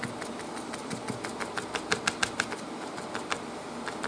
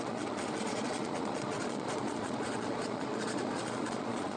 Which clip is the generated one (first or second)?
second